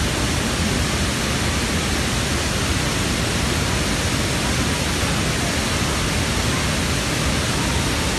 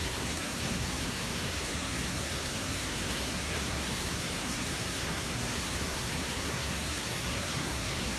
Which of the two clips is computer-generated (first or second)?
second